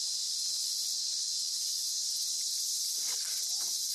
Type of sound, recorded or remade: recorded